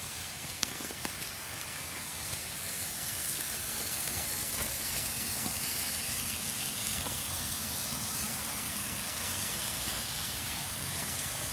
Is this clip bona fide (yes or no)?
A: no